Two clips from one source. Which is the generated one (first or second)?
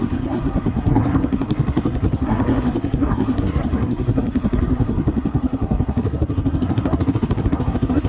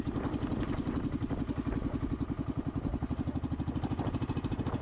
first